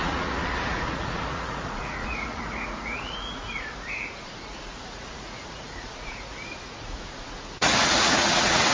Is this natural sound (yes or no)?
no